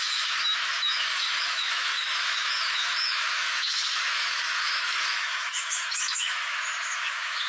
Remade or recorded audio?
remade